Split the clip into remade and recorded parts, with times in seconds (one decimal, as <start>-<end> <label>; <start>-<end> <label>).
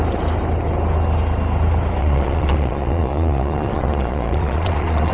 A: 0.0-2.0 recorded; 2.0-5.1 remade